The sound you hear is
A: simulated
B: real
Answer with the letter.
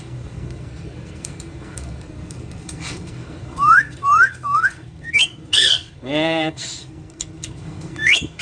A